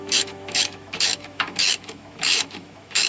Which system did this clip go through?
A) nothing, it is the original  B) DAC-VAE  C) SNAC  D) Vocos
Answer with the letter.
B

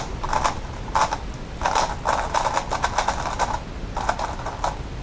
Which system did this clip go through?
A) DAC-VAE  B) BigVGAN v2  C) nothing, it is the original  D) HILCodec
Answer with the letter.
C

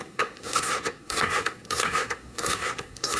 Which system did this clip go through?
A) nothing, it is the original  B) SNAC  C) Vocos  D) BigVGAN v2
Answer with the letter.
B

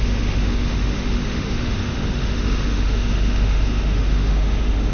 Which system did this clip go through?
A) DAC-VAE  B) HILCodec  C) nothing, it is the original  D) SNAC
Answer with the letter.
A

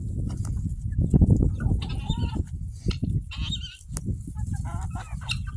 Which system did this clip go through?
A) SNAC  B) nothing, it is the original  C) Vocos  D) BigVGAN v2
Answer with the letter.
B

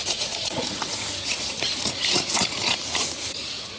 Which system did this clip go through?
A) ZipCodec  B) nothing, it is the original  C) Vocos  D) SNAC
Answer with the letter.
C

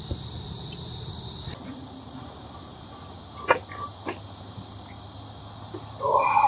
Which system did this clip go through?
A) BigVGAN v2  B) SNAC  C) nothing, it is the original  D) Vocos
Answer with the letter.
C